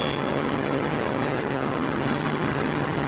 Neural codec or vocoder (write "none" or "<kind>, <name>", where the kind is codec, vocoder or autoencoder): vocoder, HiFi-GAN